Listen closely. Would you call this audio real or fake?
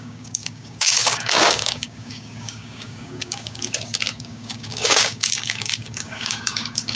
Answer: fake